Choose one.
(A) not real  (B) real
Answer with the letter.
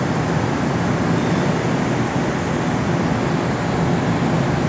B